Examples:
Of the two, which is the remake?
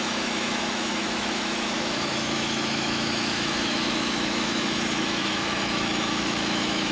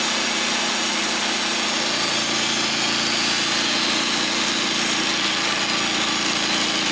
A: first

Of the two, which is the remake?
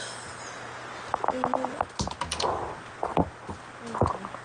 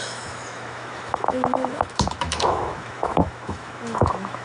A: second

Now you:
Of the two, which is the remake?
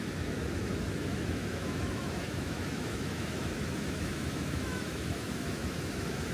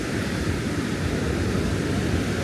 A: first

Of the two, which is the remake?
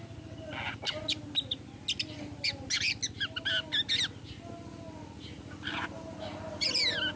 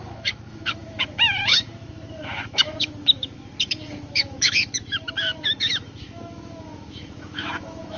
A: second